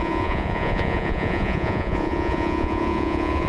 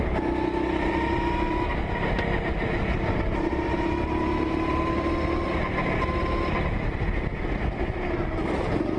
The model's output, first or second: first